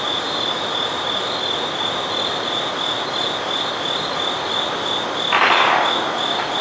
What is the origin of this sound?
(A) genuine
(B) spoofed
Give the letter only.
A